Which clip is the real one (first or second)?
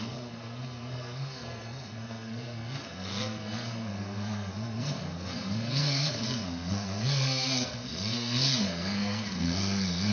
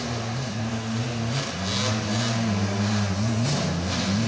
second